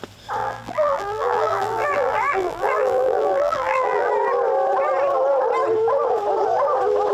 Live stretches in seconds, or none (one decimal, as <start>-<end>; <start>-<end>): 0.0-0.4; 4.1-7.1